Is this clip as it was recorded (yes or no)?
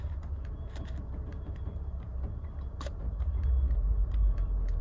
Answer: no